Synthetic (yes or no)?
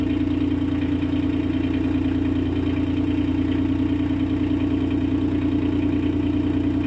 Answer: no